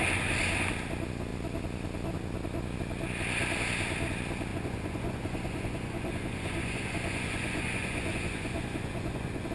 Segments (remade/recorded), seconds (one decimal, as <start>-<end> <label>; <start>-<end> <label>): 0.0-4.5 recorded; 4.5-9.5 remade